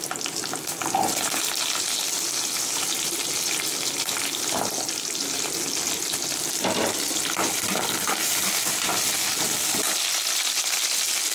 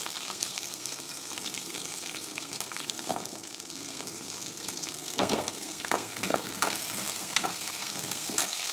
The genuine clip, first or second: first